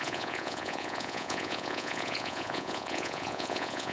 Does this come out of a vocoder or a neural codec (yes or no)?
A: yes